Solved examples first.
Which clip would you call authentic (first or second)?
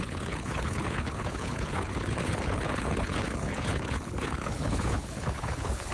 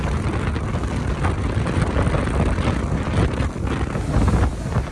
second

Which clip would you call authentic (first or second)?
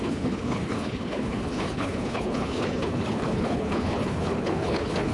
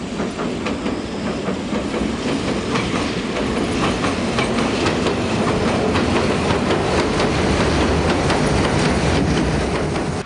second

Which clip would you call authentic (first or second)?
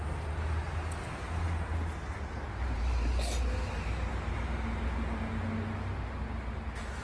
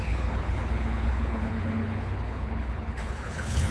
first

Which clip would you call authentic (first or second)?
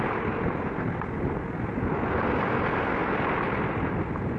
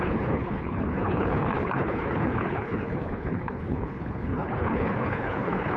first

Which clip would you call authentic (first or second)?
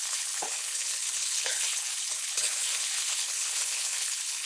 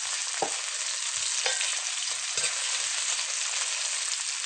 second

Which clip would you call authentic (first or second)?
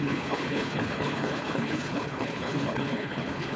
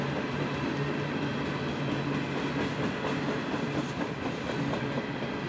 second